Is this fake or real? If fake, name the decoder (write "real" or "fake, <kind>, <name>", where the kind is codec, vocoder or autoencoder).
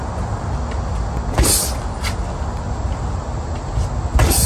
real